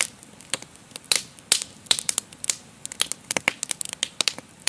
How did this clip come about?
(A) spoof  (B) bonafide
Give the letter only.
B